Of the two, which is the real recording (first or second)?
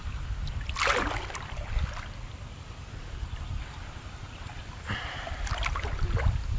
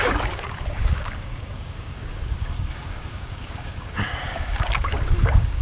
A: first